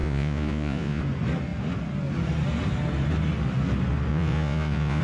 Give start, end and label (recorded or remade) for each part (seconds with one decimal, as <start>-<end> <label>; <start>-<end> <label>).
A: 0.0-1.0 remade; 1.0-4.1 recorded; 4.1-5.0 remade